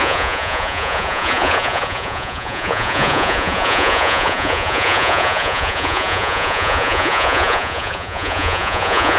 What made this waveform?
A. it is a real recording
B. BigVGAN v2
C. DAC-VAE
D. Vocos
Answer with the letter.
D